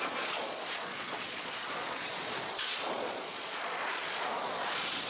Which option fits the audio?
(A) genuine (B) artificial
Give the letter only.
B